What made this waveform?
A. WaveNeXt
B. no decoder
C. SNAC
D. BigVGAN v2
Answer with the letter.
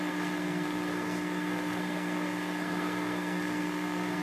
C